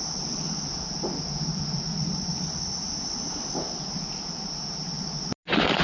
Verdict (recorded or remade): recorded